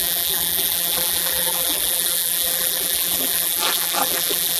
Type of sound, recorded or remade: remade